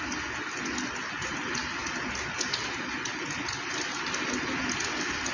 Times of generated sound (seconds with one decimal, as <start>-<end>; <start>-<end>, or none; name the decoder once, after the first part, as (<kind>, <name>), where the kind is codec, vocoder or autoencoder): none